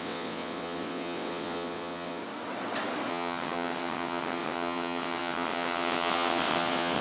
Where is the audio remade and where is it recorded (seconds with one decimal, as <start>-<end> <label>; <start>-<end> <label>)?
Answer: 0.0-2.2 remade; 2.2-3.1 recorded; 3.1-7.0 remade